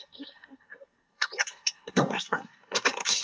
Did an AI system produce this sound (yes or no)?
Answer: yes